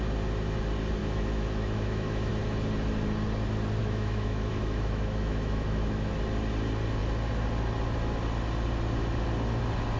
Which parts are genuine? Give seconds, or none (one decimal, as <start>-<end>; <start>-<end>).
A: 0.0-1.0; 2.3-3.8; 6.1-10.0